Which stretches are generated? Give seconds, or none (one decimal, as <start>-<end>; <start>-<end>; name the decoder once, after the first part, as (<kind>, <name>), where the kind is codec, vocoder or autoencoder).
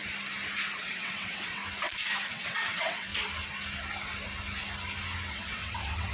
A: 0.8-1.6 (vocoder, WaveNeXt); 2.3-3.1; 5.3-6.1